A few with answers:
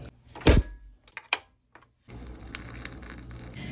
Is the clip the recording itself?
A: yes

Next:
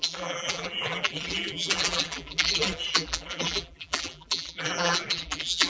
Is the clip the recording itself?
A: no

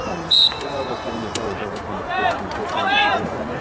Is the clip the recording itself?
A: no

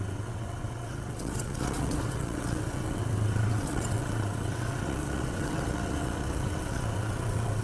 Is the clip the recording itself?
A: no